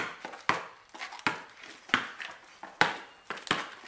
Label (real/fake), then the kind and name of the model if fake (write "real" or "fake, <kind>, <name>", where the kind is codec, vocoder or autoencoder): real